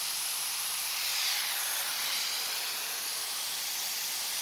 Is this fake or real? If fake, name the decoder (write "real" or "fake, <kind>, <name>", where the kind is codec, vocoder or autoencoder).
real